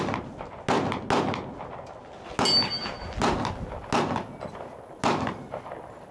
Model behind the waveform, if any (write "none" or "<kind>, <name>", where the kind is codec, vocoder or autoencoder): none